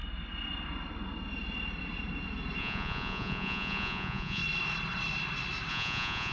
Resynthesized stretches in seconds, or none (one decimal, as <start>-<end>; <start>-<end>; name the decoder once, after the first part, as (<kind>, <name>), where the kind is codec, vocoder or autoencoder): 2.6-4.4 (vocoder, Vocos); 5.7-6.3